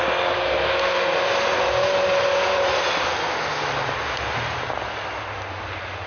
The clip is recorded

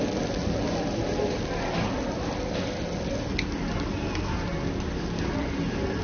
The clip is recorded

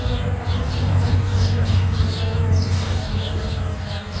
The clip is remade